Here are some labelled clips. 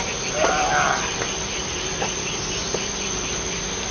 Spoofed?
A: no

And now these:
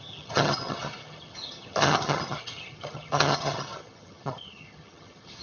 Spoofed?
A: yes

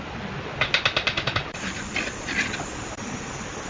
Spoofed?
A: no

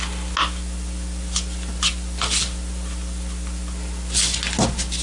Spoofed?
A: no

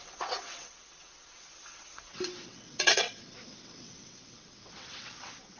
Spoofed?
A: yes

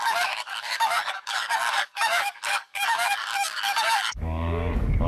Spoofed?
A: yes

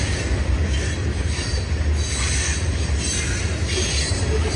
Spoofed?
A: no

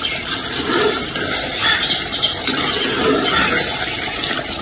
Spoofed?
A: no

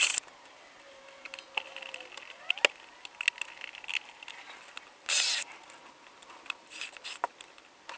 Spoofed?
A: no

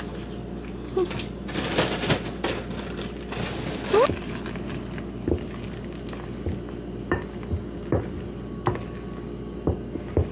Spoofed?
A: no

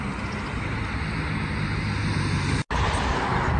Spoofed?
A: no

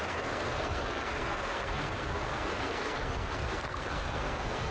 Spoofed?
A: yes